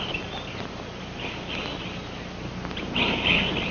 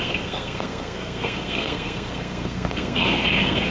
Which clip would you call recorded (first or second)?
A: first